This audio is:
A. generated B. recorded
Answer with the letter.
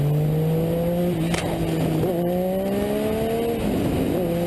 B